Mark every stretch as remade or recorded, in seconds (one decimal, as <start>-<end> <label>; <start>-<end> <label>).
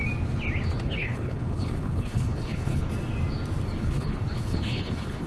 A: 0.0-0.8 recorded; 0.8-2.9 remade; 2.9-3.8 recorded; 3.8-5.3 remade